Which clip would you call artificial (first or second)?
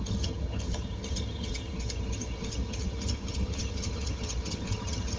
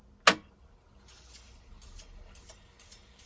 first